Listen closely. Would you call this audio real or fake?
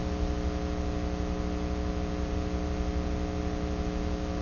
real